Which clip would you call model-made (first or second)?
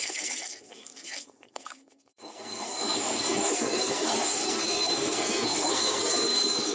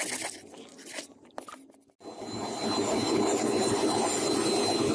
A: first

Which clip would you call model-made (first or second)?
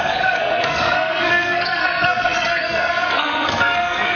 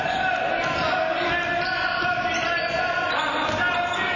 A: first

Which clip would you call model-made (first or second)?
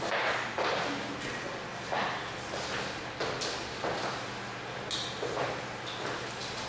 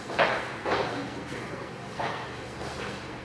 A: second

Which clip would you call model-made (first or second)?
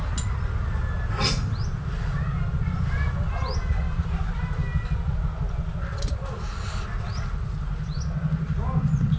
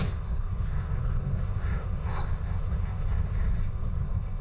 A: second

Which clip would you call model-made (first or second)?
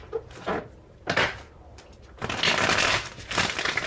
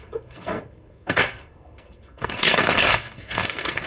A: second